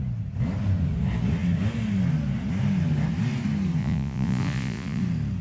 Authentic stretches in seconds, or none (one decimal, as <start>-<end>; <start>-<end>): 0.0-3.8; 5.0-5.4